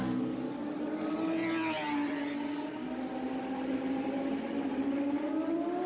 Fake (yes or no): no